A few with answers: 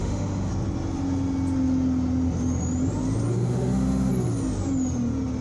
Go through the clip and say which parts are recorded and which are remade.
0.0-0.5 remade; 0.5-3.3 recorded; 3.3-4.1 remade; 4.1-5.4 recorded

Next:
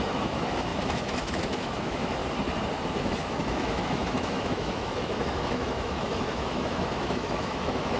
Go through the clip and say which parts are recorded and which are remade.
0.0-2.2 remade; 2.2-2.9 recorded; 2.9-8.0 remade

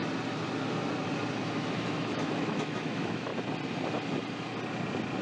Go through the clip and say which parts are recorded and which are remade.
0.0-1.7 recorded; 1.7-3.3 remade; 3.3-5.2 recorded

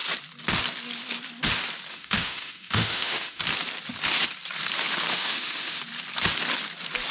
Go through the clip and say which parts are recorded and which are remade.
0.0-1.9 recorded; 1.9-3.4 remade; 3.4-5.1 recorded; 5.1-5.8 remade; 5.8-7.1 recorded